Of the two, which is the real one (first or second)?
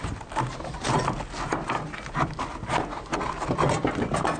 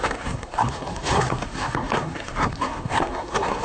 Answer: first